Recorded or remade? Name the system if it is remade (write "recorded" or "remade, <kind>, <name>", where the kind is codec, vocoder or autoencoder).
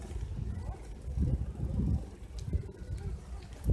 recorded